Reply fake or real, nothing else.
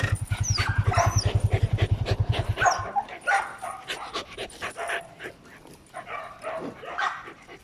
fake